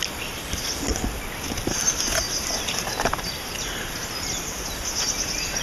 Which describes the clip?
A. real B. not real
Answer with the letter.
A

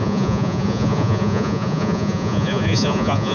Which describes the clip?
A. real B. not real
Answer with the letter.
B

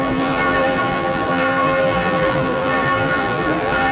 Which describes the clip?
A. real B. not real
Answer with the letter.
B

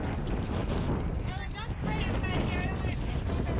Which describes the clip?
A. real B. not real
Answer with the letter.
A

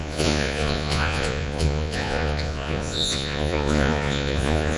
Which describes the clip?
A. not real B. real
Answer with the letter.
A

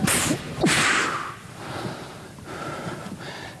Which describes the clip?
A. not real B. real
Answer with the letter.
B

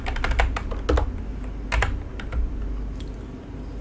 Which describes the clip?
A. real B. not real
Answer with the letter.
A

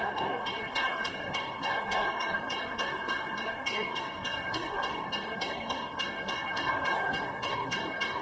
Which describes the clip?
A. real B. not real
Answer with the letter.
B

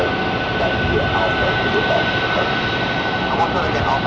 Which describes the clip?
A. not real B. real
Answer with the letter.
B